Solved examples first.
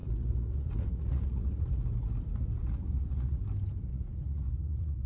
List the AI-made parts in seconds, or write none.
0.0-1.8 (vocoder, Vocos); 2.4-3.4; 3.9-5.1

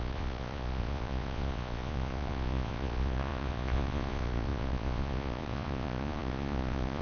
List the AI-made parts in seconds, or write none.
0.0-7.0 (vocoder, Vocos)